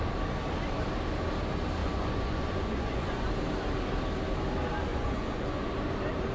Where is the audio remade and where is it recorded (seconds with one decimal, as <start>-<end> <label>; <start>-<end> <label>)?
0.0-1.8 recorded; 1.8-3.3 remade; 3.3-4.9 recorded; 4.9-5.7 remade; 5.7-6.3 recorded